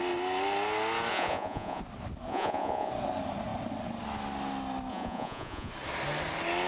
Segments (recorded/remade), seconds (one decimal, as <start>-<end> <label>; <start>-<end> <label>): 0.0-1.1 recorded; 1.1-1.8 remade; 1.8-2.3 recorded; 2.3-2.9 remade; 2.9-4.9 recorded; 4.9-5.7 remade; 5.7-6.7 recorded